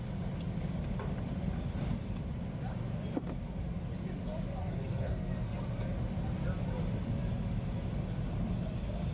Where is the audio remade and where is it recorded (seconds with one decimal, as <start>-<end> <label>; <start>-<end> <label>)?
0.0-4.6 recorded; 4.6-5.6 remade; 5.6-9.1 recorded